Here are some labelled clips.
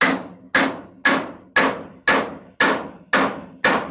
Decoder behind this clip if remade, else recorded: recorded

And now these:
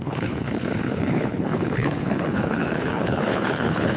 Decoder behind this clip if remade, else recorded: remade, codec, HILCodec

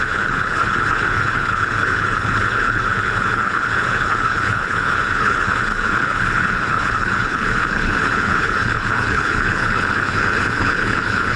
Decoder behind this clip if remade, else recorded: remade, codec, HILCodec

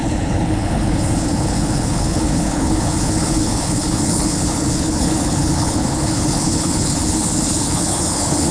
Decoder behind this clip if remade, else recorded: remade, codec, HILCodec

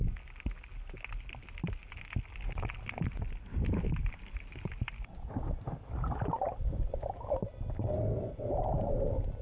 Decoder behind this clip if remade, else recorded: recorded